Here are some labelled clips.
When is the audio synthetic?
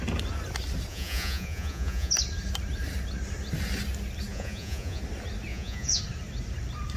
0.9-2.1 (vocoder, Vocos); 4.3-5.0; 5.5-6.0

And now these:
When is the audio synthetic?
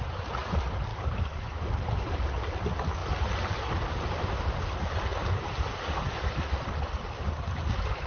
0.9-1.8 (codec, DAC)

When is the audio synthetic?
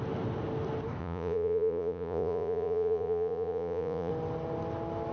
1.0-4.1 (vocoder, Vocos)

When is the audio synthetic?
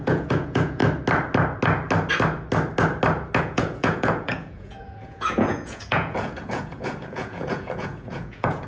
0.0-0.8 (vocoder, Vocos); 3.4-8.7